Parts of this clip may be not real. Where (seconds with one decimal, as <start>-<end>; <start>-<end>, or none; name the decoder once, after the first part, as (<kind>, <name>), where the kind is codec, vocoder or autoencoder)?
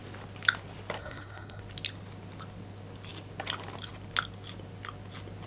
1.0-1.6 (codec, SNAC)